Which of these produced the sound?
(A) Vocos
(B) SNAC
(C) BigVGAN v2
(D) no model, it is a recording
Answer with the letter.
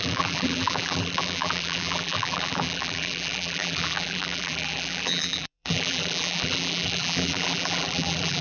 C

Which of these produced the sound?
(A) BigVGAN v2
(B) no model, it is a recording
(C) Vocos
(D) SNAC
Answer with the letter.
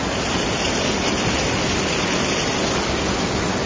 B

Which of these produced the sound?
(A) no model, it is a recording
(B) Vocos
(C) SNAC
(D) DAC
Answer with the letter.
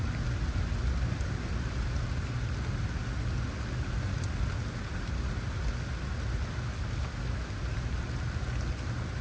A